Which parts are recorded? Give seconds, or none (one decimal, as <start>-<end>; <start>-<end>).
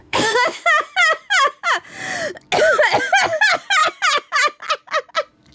0.8-5.5